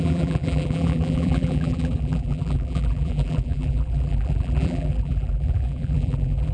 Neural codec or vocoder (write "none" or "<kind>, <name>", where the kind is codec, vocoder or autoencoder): vocoder, BigVGAN v2